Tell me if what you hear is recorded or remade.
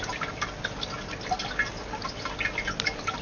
recorded